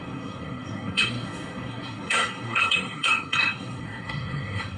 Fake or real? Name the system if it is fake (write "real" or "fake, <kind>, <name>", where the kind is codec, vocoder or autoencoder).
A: fake, codec, SNAC